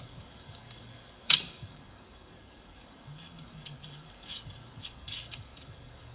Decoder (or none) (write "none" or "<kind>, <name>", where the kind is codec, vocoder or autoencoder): codec, DAC